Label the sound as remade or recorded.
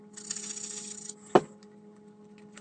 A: recorded